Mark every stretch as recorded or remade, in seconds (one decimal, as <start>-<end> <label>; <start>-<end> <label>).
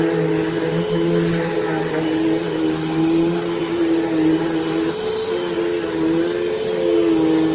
0.0-7.5 recorded